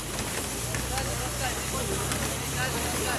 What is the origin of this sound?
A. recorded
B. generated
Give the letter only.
A